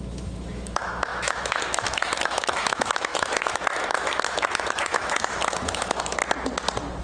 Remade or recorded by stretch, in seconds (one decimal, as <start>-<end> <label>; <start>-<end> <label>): 0.0-6.2 remade; 6.2-7.0 recorded

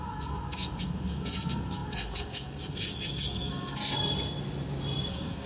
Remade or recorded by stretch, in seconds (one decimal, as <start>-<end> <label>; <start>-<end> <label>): 0.0-3.8 remade; 3.8-5.1 recorded; 5.1-5.5 remade

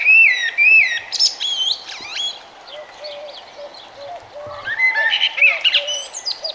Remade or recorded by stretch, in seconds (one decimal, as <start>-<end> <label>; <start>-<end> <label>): 0.0-2.1 remade; 2.1-4.6 recorded; 4.6-6.5 remade

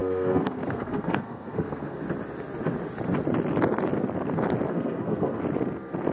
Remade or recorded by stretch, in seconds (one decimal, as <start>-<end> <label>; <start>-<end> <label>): 0.0-2.0 remade; 2.0-4.7 recorded; 4.7-5.4 remade; 5.4-6.1 recorded

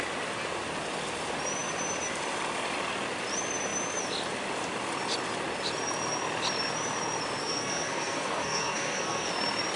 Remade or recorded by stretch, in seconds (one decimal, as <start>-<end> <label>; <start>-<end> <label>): 0.0-7.4 recorded; 7.4-9.3 remade; 9.3-9.8 recorded

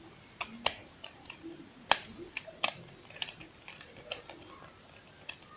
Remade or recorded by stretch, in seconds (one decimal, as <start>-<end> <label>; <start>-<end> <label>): 0.0-0.8 recorded; 0.8-2.9 remade; 2.9-4.4 recorded; 4.4-5.0 remade; 5.0-5.6 recorded

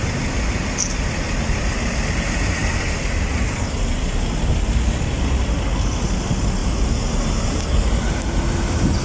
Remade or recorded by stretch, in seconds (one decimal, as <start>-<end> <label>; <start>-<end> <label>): 0.0-9.0 recorded

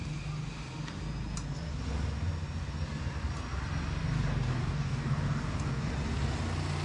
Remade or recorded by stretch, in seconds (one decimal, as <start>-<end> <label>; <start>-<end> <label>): 0.0-4.5 recorded; 4.5-5.9 remade; 5.9-6.8 recorded